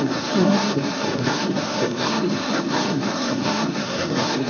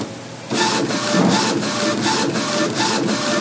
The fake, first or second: first